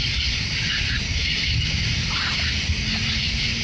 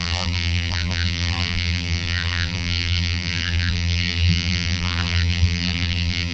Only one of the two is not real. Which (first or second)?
second